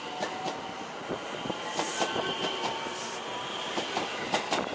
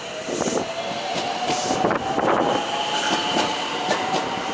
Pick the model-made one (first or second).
second